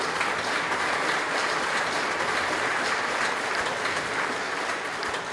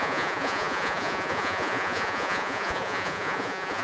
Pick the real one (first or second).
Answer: first